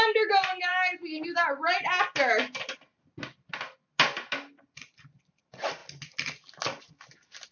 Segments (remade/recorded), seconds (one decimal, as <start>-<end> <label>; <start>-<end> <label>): 0.0-7.5 recorded